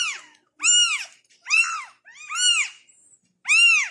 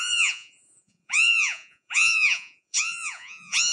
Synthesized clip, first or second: second